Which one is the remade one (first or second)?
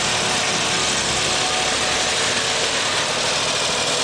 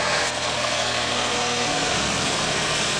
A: second